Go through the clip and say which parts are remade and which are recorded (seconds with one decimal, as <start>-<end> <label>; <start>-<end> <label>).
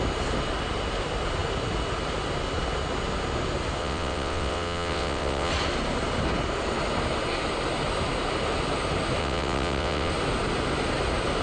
0.0-3.8 recorded; 3.8-5.5 remade; 5.5-9.2 recorded; 9.2-10.1 remade; 10.1-11.4 recorded